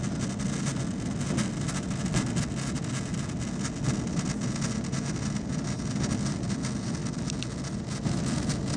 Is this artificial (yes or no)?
no